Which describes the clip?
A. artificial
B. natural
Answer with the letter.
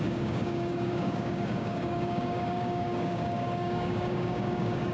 A